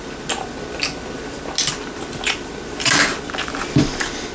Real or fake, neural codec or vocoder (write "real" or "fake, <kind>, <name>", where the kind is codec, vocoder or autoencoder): real